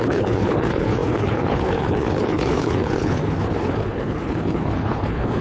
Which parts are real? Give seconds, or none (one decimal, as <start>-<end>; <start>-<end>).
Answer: none